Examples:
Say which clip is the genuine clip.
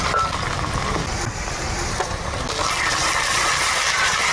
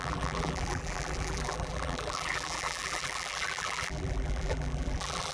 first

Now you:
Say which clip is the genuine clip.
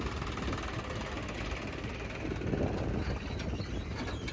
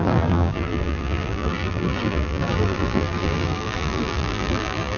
first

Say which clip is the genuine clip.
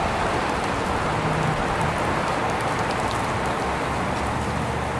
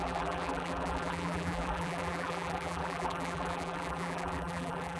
first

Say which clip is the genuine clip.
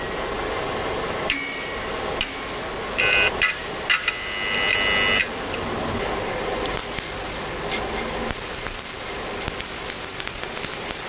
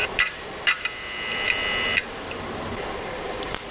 first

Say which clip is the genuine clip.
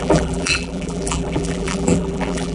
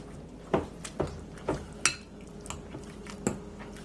second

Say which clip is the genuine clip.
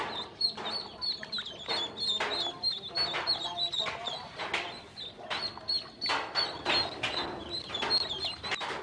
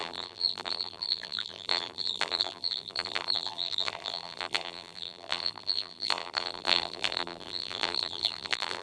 first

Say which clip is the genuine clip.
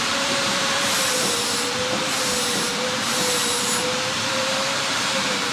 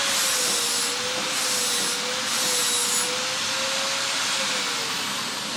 second